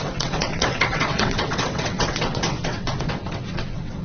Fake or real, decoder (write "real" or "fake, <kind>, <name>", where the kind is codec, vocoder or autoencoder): fake, vocoder, WaveNeXt